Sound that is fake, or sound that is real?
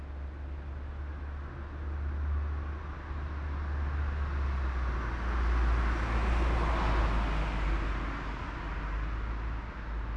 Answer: real